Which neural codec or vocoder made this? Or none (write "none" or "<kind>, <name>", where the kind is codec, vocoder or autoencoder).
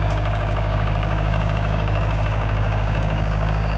codec, DAC